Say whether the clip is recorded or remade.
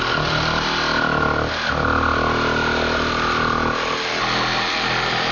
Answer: recorded